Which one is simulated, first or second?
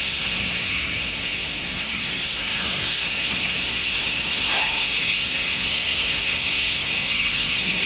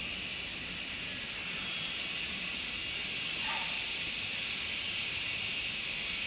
first